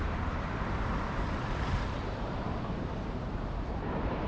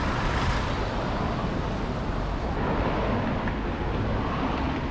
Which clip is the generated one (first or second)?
first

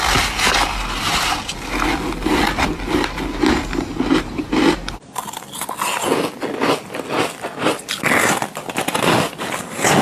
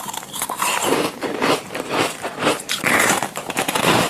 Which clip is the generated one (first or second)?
second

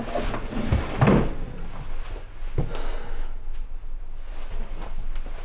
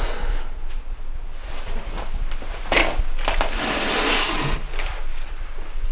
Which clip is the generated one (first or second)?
second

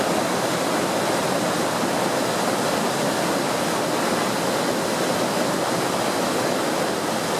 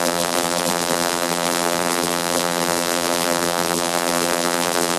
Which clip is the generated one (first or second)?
second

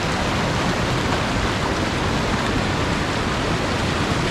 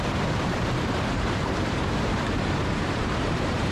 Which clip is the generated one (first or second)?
second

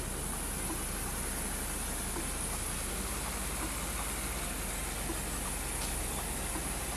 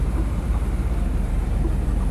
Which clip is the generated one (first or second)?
second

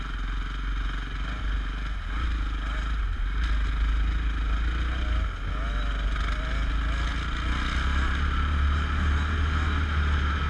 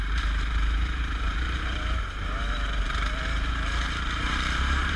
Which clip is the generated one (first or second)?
second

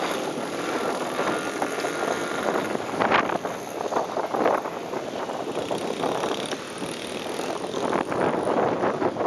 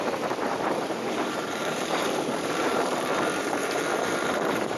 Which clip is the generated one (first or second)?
second